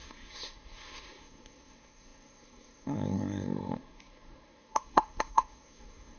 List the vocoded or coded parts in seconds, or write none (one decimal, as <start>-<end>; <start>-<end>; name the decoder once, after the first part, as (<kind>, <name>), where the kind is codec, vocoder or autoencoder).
0.0-6.2 (codec, SNAC)